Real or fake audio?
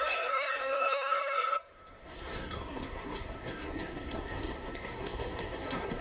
fake